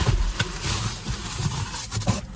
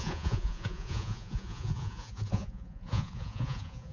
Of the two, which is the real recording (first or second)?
first